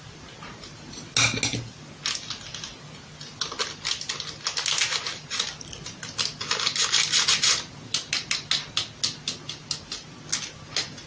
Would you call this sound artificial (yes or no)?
no